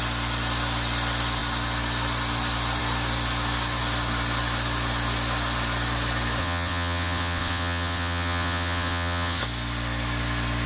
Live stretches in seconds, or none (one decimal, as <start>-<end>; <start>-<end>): 0.0-6.4; 9.4-10.7